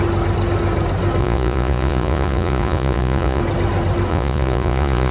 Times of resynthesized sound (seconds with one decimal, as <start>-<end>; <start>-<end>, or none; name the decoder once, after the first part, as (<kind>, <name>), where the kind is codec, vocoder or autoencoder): 1.2-3.4 (vocoder, Vocos); 4.1-5.1